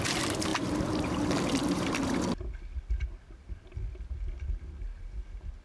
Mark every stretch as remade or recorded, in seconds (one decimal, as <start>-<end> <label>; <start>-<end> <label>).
0.0-0.5 recorded; 0.5-2.4 remade; 2.4-5.6 recorded